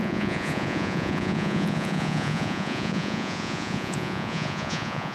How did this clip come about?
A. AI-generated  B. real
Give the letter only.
A